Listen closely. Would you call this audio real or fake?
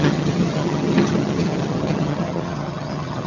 fake